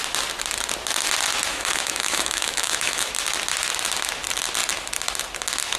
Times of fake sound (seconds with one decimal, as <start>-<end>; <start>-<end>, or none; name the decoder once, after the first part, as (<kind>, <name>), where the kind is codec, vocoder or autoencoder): 1.5-3.1 (autoencoder, DAC-VAE)